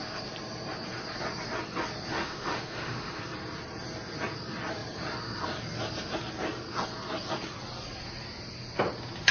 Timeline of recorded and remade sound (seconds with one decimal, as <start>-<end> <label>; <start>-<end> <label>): 0.0-2.1 recorded; 2.1-3.2 remade; 3.2-9.3 recorded